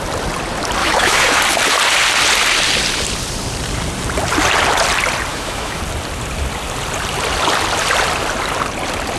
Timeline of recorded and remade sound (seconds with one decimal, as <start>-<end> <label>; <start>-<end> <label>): 0.0-0.8 recorded; 0.8-1.4 remade; 1.4-5.3 recorded; 5.3-5.8 remade; 5.8-9.2 recorded